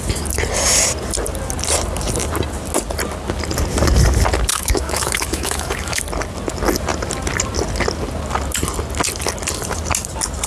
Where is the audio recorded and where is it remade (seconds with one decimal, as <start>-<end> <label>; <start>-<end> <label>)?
0.0-4.5 recorded; 4.5-6.0 remade; 6.0-10.5 recorded